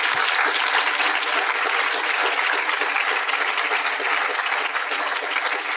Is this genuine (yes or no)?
yes